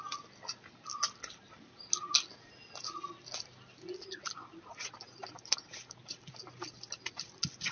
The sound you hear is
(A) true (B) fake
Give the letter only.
A